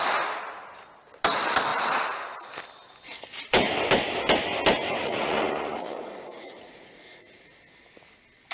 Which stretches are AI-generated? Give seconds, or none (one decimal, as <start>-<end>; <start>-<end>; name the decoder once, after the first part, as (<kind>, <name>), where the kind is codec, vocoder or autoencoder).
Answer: 5.0-7.5 (vocoder, Vocos)